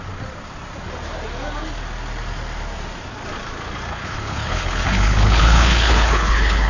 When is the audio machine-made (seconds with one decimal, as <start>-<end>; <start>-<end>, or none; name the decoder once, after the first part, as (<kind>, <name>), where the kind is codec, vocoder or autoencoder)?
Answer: 3.9-6.7 (codec, HILCodec)